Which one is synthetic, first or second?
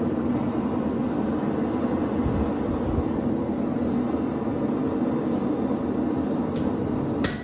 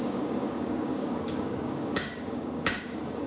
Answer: second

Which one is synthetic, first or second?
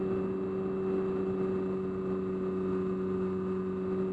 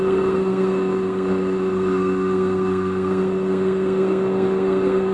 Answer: second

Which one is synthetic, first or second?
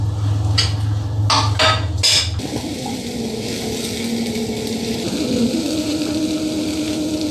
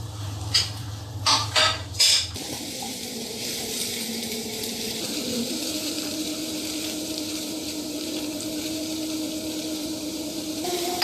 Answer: second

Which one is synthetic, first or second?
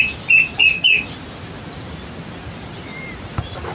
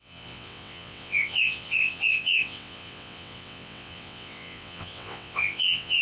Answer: second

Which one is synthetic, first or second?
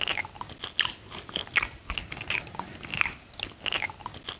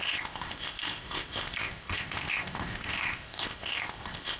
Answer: second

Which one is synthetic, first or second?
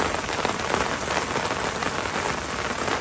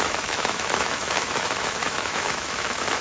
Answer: second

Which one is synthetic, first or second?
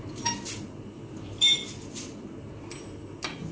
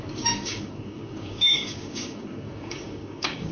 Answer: second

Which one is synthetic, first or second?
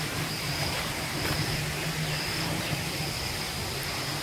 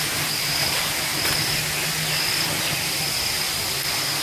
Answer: first